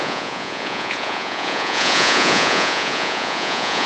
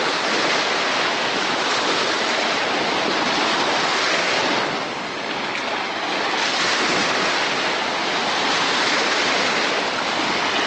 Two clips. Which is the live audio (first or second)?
second